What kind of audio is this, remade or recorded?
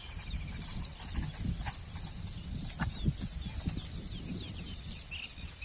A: recorded